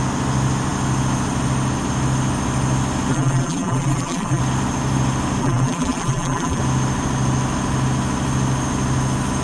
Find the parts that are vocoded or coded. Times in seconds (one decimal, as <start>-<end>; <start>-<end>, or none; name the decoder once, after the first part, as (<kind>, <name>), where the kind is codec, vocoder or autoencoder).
3.1-4.4 (vocoder, BigVGAN v2); 5.4-6.6